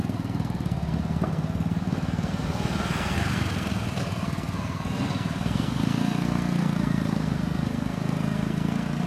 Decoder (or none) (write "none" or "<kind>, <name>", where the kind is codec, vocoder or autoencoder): codec, SNAC